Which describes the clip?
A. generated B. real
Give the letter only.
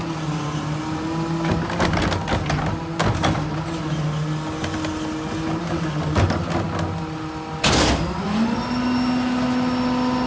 B